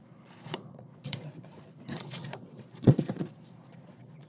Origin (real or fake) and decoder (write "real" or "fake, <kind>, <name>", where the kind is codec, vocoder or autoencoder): fake, vocoder, Vocos